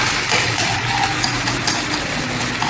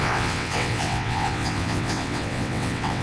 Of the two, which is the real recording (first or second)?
first